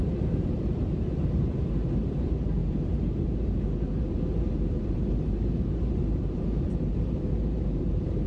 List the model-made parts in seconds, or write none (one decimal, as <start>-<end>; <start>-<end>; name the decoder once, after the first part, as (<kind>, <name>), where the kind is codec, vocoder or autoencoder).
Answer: 0.0-8.3 (vocoder, BigVGAN v2)